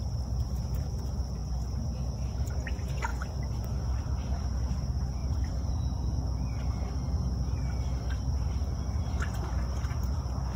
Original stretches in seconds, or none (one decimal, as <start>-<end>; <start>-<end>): 0.0-5.2; 5.7-10.6